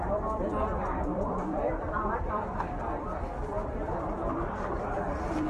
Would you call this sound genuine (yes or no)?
no